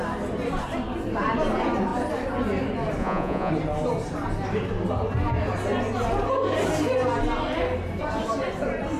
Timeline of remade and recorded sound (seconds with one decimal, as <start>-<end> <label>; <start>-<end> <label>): 0.0-3.0 recorded; 3.0-3.5 remade; 3.5-9.0 recorded